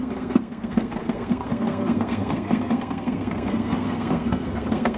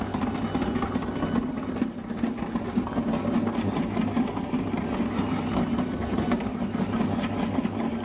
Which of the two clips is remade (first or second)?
first